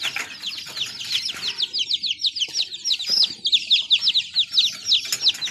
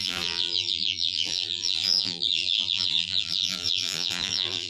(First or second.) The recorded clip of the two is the first